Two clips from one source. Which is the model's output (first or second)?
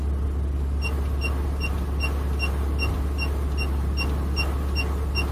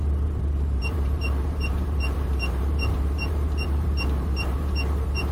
second